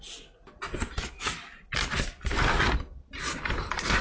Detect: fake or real real